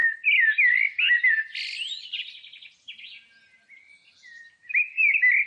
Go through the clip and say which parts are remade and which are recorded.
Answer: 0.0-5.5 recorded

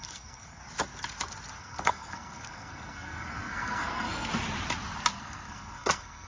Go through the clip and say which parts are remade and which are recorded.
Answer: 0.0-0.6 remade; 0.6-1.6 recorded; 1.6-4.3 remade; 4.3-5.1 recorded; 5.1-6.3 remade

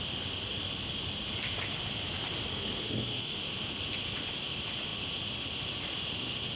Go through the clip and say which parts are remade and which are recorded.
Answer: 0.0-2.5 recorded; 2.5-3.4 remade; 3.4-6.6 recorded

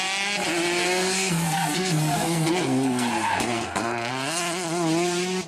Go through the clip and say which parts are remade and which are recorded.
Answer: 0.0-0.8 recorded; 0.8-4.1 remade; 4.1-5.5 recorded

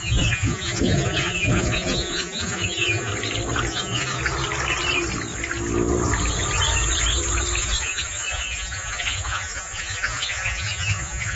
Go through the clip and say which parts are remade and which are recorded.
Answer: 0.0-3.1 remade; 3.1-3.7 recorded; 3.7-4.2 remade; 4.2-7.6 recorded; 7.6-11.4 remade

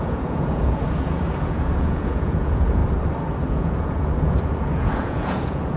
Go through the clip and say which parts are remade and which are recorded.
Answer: 0.0-2.8 remade; 2.8-3.5 recorded; 3.5-5.8 remade